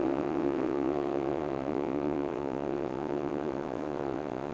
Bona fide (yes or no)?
no